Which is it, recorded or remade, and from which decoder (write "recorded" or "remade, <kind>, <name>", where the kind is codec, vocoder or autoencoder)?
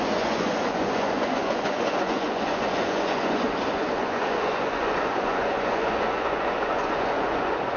remade, vocoder, Vocos